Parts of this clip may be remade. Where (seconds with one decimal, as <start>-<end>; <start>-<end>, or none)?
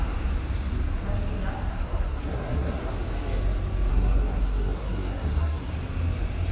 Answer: 1.7-2.9; 3.9-5.7